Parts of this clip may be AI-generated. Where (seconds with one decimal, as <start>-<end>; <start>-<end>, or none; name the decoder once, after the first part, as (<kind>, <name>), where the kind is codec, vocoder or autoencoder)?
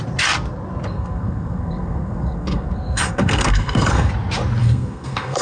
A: 0.9-4.1 (codec, SNAC); 4.6-5.4